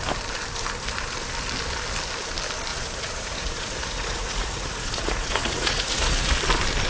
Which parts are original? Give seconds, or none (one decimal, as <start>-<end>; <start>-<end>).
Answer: 0.0-2.7; 6.1-6.9

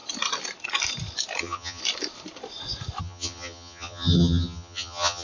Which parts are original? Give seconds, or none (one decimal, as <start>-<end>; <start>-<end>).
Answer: 0.0-1.4; 1.8-3.0

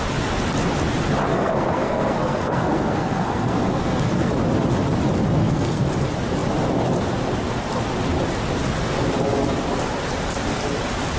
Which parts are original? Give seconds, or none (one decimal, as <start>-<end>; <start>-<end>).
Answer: 0.0-1.3; 4.3-5.4; 5.9-11.2